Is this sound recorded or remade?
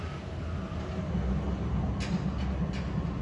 recorded